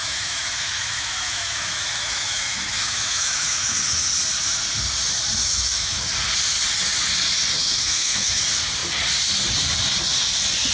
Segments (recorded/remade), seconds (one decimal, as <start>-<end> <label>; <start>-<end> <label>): 0.0-3.8 remade; 3.8-5.4 recorded; 5.4-6.0 remade; 6.0-7.6 recorded; 7.6-8.4 remade; 8.4-10.7 recorded